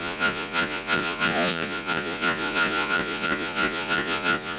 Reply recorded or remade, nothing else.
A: remade